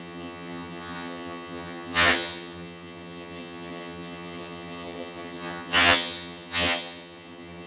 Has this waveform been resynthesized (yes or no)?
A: yes